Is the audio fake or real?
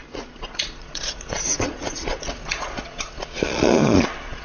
fake